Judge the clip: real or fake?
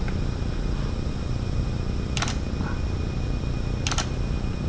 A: real